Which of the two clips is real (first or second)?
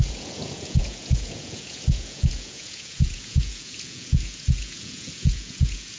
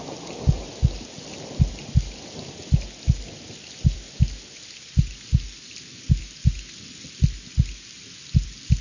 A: second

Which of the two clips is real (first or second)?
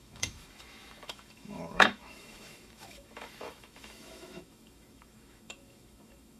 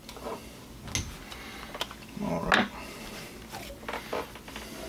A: second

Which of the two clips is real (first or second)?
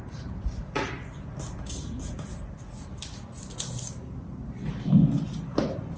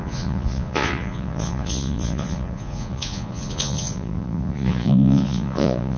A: first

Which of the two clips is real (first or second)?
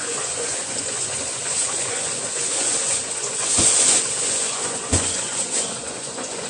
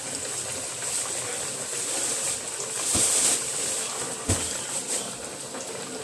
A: second